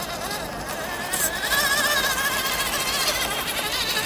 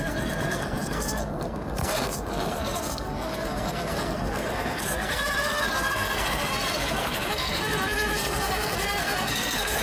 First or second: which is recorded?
first